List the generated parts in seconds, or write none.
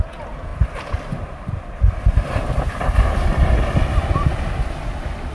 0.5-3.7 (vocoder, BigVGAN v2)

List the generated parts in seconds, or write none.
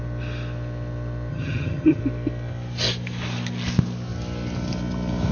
1.3-2.0 (vocoder, HiFi-GAN)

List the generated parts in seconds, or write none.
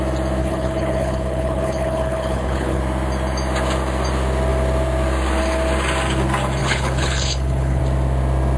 0.4-2.8 (codec, HILCodec); 6.6-7.8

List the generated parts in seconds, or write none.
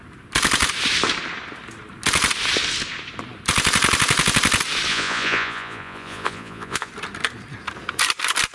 4.9-6.9 (vocoder, Vocos)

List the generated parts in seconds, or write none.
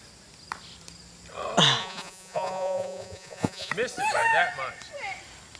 1.8-3.7 (vocoder, Vocos)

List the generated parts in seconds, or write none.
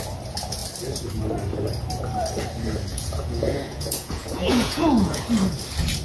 2.9-5.2 (vocoder, Vocos)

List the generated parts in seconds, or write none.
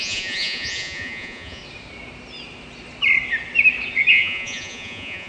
0.0-1.6 (vocoder, Vocos); 4.1-5.3